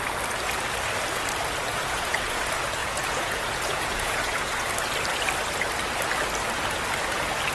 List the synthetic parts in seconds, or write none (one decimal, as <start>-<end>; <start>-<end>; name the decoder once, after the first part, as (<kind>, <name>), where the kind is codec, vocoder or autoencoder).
1.7-2.4 (vocoder, Vocos); 2.8-4.7